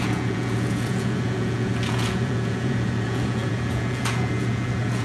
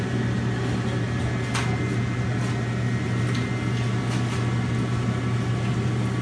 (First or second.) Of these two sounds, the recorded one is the second